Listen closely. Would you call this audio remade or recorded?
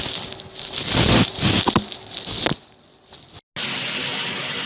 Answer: recorded